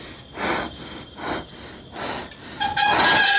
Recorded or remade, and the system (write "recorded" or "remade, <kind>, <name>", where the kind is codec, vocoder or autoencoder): recorded